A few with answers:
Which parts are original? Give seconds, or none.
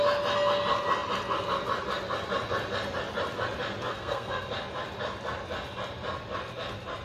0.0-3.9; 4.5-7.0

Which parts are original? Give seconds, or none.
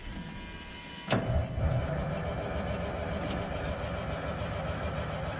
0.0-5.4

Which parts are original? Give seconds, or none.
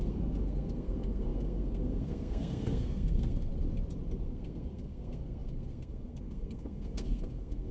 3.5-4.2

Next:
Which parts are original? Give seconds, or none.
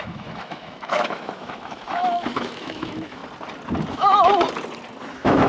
3.2-3.9; 4.3-5.1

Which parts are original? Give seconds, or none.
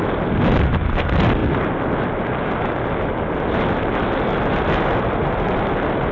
0.0-6.1